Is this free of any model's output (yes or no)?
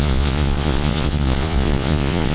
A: no